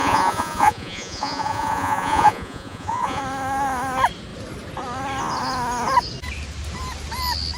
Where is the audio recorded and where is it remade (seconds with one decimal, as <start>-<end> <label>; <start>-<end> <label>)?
0.0-3.2 remade; 3.2-7.6 recorded